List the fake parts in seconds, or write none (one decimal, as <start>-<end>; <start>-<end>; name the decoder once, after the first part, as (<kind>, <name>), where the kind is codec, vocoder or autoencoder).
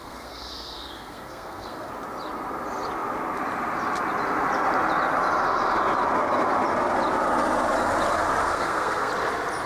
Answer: 0.0-1.9 (codec, SNAC); 8.4-9.1